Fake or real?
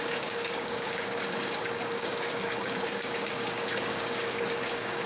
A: fake